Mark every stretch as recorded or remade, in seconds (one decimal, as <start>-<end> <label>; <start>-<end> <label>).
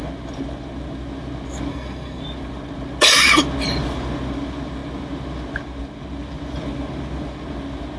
0.0-1.7 recorded; 1.7-2.2 remade; 2.2-8.0 recorded